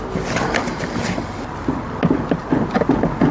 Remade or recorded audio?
recorded